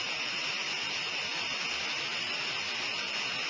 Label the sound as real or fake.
real